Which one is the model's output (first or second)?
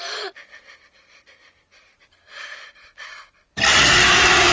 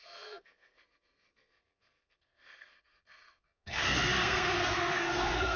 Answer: second